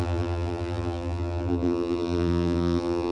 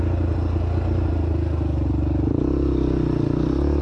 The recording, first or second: second